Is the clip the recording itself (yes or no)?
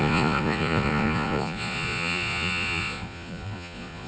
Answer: no